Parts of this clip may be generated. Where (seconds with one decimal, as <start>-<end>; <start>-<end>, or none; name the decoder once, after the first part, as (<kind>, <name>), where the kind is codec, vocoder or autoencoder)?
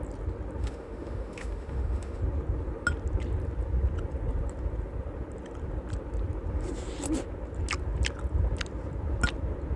0.6-2.2 (autoencoder, DAC-VAE)